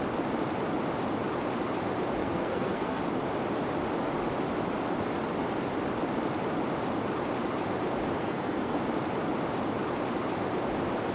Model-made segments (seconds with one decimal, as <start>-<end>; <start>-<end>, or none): 2.2-3.0; 8.2-8.8